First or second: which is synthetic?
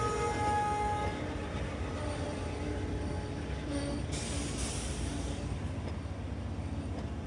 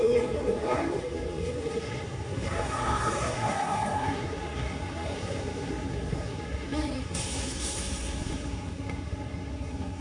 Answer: second